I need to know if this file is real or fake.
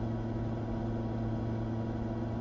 real